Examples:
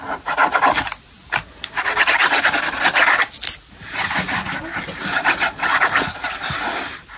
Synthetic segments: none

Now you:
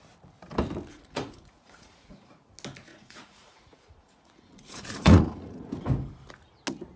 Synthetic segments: 0.9-2.3 (vocoder, Vocos); 2.9-5.7

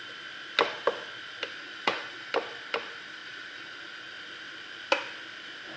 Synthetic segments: 1.6-2.3 (vocoder, Vocos); 3.2-4.1

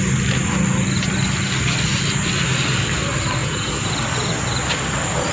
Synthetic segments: 3.4-3.9 (vocoder, Vocos)